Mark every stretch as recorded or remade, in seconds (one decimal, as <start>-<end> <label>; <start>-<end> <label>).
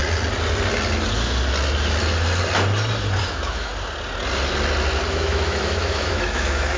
0.0-3.2 recorded; 3.2-3.7 remade; 3.7-5.1 recorded; 5.1-6.8 remade